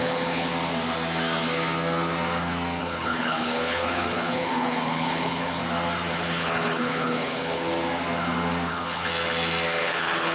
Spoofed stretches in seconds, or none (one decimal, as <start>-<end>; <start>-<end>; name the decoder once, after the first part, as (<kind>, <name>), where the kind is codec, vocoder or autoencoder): 0.0-0.5 (codec, HILCodec); 2.8-5.6; 6.1-7.7; 8.7-9.1; 9.8-10.3